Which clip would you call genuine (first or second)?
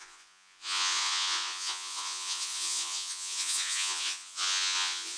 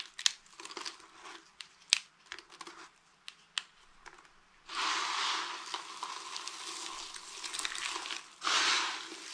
second